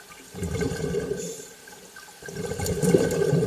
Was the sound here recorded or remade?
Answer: recorded